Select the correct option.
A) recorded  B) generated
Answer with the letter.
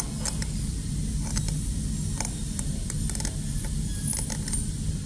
A